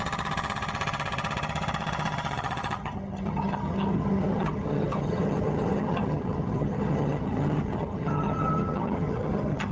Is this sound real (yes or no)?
no